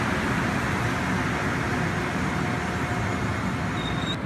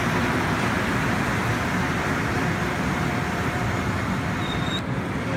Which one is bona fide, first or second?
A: first